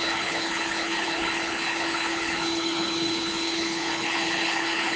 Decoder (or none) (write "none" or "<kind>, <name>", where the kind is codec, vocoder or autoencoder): codec, HILCodec